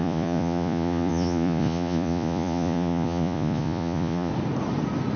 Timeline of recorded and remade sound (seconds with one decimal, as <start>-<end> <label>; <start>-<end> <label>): 0.0-4.3 remade; 4.3-5.2 recorded